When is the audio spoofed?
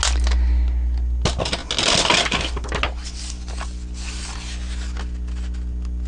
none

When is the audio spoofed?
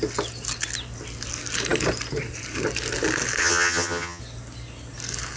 3.4-4.2 (vocoder, HiFi-GAN)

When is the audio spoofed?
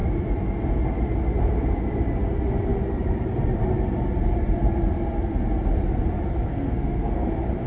6.5-7.3 (codec, SNAC)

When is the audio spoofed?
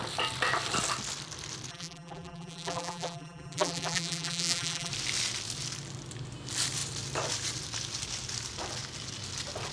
1.7-4.9 (vocoder, BigVGAN v2)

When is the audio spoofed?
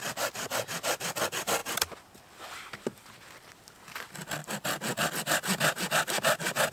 none